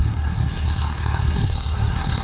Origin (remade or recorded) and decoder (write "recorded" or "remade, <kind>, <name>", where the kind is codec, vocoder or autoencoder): remade, codec, SNAC